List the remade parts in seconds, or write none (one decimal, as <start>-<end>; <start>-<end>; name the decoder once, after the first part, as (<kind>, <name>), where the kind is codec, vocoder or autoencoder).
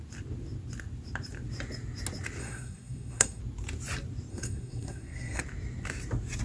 2.4-3.4 (codec, SNAC); 4.3-5.4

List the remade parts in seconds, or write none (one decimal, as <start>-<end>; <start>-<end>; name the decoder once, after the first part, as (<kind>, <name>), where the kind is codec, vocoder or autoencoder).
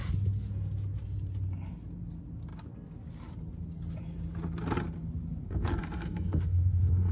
5.4-7.1 (codec, SNAC)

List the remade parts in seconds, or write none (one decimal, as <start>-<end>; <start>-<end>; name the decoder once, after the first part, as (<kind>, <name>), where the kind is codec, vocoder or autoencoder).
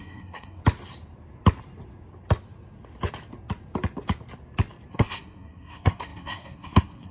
0.0-0.6 (codec, SNAC); 4.9-7.1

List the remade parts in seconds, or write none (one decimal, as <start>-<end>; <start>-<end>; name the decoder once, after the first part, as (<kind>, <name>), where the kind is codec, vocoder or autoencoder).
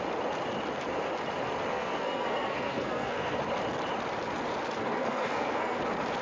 1.7-3.4 (codec, SNAC); 4.8-5.8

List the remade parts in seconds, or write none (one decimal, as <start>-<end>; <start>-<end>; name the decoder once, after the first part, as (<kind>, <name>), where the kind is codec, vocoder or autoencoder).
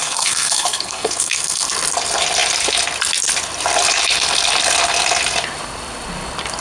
0.0-1.7 (codec, SNAC)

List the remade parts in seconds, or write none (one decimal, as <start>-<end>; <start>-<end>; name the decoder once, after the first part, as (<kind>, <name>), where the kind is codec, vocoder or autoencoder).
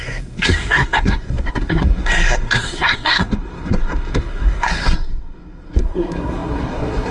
0.0-7.1 (codec, SNAC)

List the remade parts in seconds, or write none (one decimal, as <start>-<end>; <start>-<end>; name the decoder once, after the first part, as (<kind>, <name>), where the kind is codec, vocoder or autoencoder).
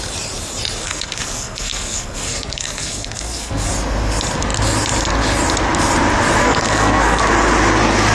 0.8-3.7 (codec, SNAC); 6.4-7.2